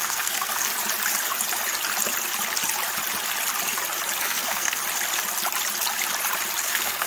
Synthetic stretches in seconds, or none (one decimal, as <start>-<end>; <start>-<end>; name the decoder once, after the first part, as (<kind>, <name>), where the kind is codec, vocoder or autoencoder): 0.0-0.7 (codec, SNAC); 4.2-4.8; 6.6-7.1